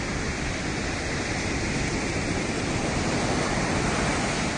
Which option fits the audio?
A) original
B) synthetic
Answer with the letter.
A